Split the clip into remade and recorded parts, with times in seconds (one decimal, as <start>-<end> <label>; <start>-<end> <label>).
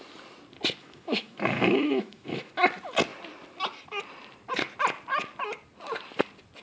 0.0-0.8 recorded; 0.8-2.5 remade; 2.5-6.6 recorded